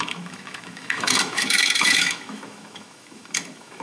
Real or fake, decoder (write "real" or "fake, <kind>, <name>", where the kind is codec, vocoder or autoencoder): fake, autoencoder, DAC-VAE